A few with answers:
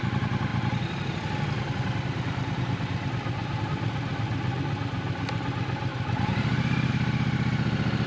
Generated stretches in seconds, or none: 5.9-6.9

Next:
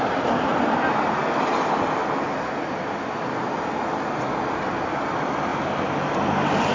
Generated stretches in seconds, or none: none

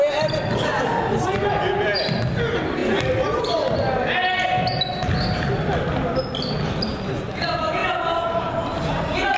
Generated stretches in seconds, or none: 7.8-8.5

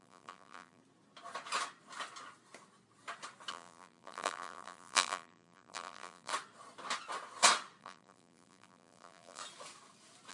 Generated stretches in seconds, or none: 0.0-0.8; 3.5-6.3; 7.8-9.4

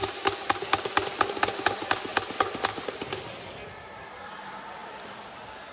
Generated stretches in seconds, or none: 0.0-1.3

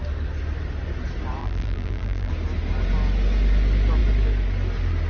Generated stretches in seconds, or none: 1.4-2.3

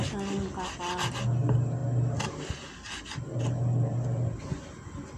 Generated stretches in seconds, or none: none